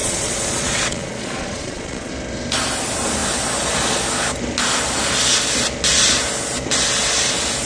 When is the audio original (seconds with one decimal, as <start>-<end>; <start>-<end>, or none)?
2.1-7.7